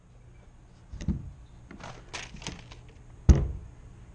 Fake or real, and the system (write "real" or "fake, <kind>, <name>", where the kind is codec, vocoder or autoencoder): real